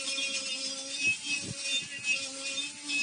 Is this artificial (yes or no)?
no